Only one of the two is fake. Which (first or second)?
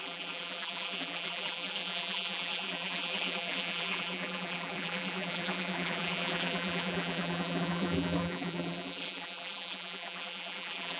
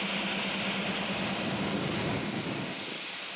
first